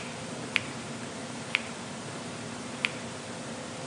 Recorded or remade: remade